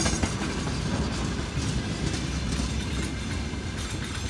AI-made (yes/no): no